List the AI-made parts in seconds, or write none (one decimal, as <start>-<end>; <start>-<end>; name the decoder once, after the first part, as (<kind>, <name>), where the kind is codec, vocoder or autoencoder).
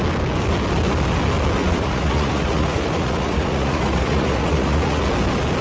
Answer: 1.6-5.0 (vocoder, Vocos)